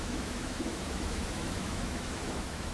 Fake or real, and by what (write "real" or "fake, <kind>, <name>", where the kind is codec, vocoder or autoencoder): fake, autoencoder, DAC-VAE